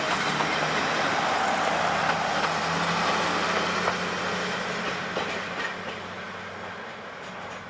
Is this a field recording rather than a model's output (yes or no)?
yes